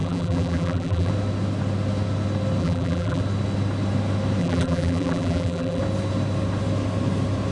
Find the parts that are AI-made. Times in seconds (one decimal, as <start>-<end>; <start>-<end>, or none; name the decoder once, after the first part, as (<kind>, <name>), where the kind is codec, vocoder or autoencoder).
0.0-1.1 (vocoder, BigVGAN v2); 2.6-3.2; 4.4-5.8

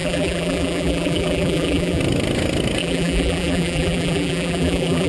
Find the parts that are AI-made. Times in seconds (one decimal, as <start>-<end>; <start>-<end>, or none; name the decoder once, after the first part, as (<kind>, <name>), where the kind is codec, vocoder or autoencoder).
0.0-2.0 (vocoder, BigVGAN v2); 2.8-5.1